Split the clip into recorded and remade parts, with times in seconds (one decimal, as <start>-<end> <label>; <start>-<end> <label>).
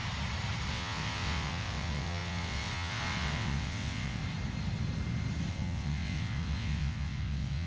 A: 0.0-0.7 recorded; 0.7-4.2 remade; 4.2-5.5 recorded; 5.5-7.7 remade